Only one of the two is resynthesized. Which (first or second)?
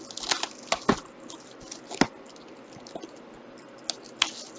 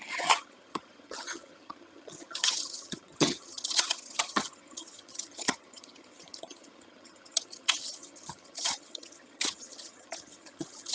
second